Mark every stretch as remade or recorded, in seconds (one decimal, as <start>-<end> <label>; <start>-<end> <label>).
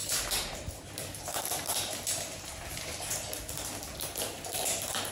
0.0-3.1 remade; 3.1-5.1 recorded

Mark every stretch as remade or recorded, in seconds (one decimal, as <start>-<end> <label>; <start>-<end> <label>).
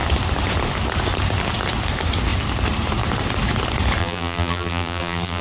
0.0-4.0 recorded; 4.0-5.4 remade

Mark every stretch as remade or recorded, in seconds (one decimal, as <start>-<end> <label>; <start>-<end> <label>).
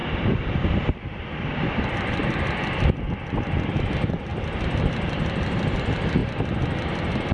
0.0-4.3 remade; 4.3-4.8 recorded; 4.8-6.2 remade; 6.2-7.3 recorded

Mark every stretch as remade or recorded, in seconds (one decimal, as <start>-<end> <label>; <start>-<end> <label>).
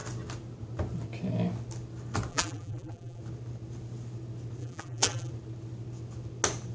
0.0-2.3 recorded; 2.3-3.2 remade; 3.2-4.6 recorded; 4.6-5.3 remade; 5.3-6.7 recorded